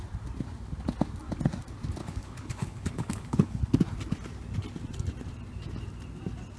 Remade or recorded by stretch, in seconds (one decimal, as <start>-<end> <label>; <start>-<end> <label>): 0.0-2.0 recorded; 2.0-3.7 remade; 3.7-6.6 recorded